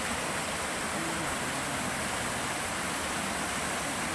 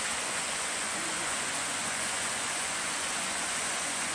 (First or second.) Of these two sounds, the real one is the first